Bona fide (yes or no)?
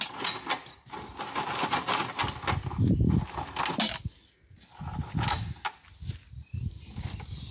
yes